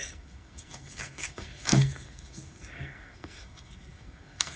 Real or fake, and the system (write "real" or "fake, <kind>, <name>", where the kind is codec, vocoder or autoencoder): fake, codec, SNAC